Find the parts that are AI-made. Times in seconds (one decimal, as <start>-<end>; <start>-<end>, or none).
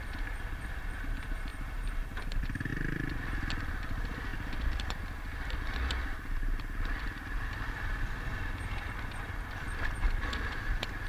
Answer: 0.0-11.1